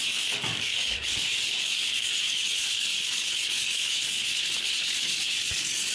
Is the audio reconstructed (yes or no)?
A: yes